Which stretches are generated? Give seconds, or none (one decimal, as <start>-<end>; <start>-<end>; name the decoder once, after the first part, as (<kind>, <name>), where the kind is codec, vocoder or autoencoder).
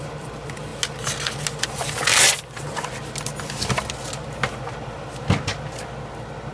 none